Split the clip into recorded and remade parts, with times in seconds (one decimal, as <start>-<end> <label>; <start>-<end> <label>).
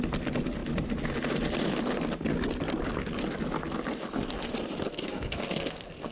0.0-4.9 recorded; 4.9-6.1 remade